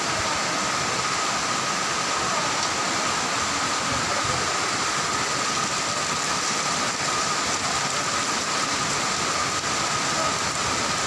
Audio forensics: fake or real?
real